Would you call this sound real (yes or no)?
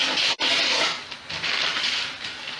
yes